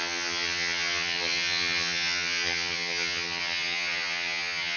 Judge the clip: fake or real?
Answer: fake